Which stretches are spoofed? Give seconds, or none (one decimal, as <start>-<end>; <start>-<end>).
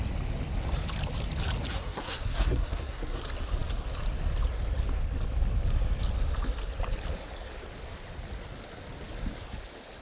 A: 1.7-3.2